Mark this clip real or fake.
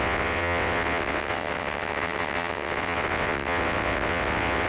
fake